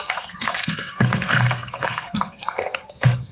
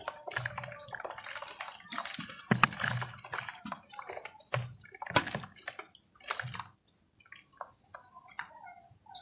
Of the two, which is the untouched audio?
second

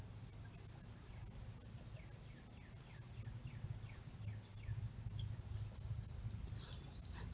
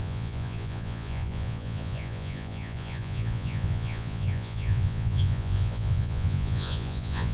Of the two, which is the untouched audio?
first